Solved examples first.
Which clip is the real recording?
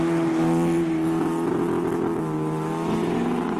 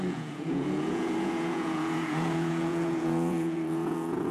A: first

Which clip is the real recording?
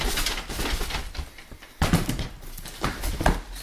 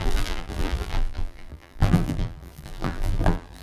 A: first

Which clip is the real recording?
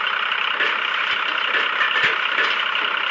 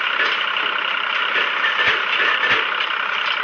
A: second